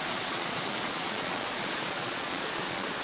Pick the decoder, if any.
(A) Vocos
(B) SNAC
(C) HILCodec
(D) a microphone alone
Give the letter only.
A